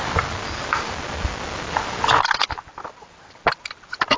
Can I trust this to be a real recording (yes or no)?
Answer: yes